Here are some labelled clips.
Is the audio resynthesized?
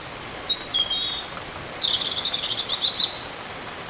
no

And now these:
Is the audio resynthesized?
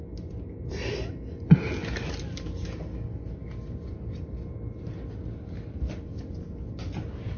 no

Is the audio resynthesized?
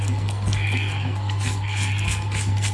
yes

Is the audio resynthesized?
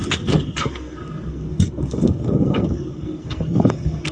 yes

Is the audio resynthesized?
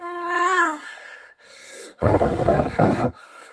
yes